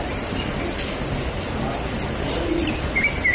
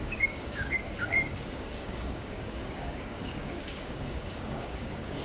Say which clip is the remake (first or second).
second